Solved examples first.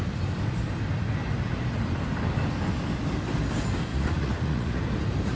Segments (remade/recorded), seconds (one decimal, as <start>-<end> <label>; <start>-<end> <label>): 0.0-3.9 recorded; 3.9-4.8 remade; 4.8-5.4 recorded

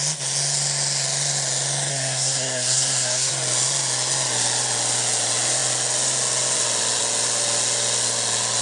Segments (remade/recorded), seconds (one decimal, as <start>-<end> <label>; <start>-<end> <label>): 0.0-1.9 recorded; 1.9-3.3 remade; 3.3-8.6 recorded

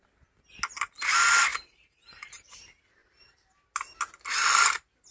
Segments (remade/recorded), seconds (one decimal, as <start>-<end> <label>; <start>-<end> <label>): 0.0-1.5 recorded; 1.5-2.6 remade; 2.6-5.1 recorded